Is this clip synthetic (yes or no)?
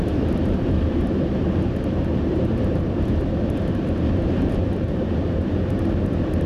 yes